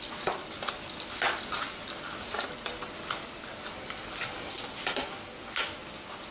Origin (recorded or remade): recorded